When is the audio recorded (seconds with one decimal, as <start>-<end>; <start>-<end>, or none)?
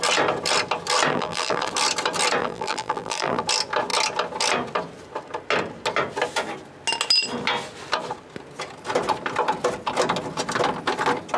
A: 0.0-1.1; 1.7-2.4; 3.4-11.4